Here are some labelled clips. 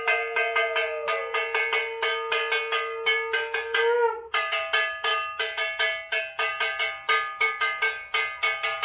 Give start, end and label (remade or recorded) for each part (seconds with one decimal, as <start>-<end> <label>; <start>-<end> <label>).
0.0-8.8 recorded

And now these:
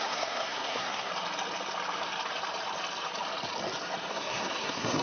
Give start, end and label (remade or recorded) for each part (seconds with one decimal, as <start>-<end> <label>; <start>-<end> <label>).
0.0-1.1 remade; 1.1-4.1 recorded; 4.1-5.0 remade

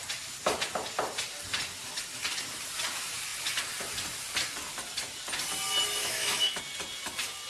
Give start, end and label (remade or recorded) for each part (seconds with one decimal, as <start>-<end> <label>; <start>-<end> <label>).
0.0-6.0 recorded; 6.0-6.6 remade; 6.6-7.5 recorded

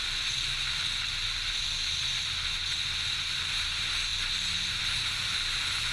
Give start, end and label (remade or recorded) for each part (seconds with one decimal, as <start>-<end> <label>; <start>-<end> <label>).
0.0-5.9 recorded

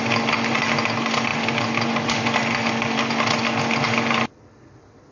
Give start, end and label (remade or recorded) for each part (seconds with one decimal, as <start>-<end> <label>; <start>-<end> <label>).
0.0-5.1 recorded